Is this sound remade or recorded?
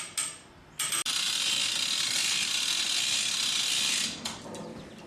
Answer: recorded